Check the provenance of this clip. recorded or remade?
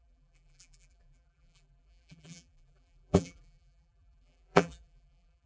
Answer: remade